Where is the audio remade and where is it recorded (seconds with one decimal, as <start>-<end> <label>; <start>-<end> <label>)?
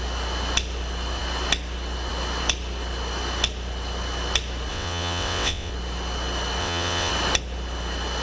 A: 0.0-4.7 recorded; 4.7-5.7 remade; 5.7-6.6 recorded; 6.6-7.1 remade; 7.1-8.2 recorded